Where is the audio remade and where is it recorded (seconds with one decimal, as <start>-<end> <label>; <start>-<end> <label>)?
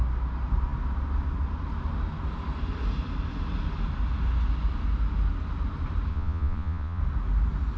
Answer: 0.0-6.1 recorded; 6.1-7.0 remade; 7.0-7.8 recorded